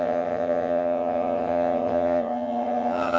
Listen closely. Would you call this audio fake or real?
fake